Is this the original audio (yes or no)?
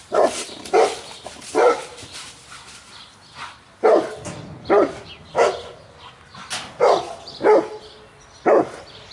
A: yes